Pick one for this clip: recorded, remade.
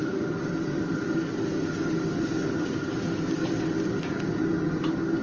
recorded